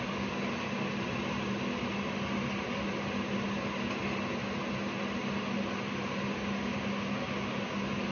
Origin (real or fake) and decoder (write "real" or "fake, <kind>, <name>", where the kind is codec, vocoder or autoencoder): real